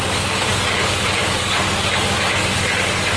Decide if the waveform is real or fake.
fake